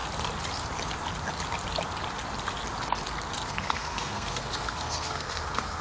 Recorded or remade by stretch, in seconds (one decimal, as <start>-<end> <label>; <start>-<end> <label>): 0.0-3.5 recorded; 3.5-5.8 remade